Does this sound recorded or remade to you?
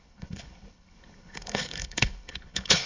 remade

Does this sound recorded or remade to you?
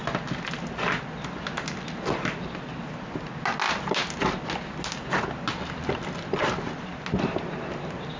recorded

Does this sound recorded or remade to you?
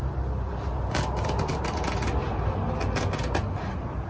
recorded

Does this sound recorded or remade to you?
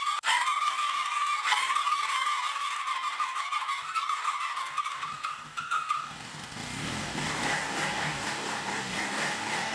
remade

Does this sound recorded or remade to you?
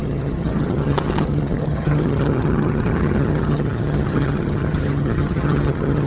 remade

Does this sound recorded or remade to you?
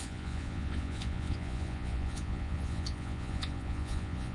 remade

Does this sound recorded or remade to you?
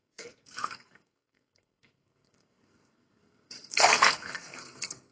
remade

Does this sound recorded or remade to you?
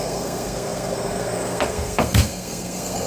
remade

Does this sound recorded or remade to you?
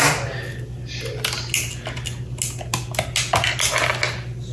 recorded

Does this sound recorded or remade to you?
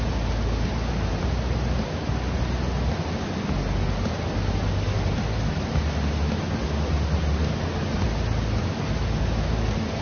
recorded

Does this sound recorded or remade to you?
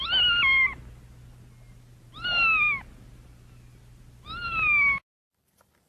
recorded